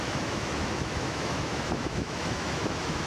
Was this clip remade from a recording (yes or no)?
yes